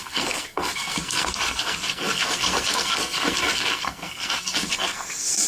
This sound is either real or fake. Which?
fake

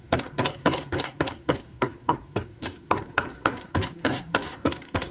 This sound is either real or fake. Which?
fake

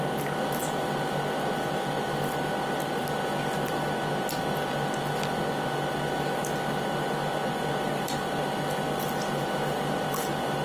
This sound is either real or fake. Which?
real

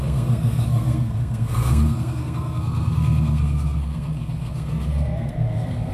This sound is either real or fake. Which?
fake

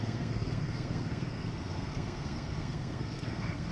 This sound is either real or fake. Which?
fake